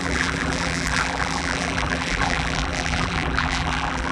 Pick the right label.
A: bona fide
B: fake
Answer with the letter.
B